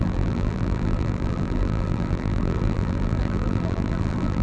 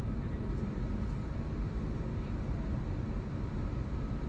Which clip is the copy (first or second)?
first